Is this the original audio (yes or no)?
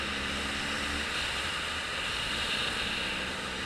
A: yes